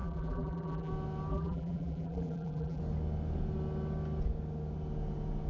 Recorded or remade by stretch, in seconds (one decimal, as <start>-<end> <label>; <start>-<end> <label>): 0.0-0.9 remade; 0.9-1.3 recorded; 1.3-2.8 remade; 2.8-5.5 recorded